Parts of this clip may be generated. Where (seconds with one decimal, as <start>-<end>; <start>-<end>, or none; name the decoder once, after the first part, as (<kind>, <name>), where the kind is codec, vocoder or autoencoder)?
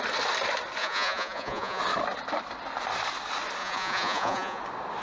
0.8-1.8 (vocoder, Vocos); 3.6-4.6